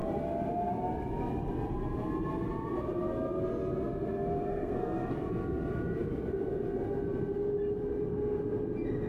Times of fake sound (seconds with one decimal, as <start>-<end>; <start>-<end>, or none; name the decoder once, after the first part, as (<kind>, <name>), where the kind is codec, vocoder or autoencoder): 4.5-5.3 (codec, SNAC)